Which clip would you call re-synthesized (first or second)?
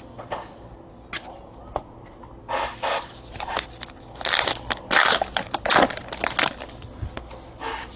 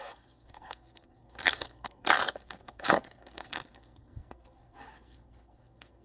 second